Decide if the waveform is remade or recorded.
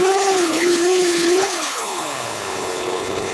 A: remade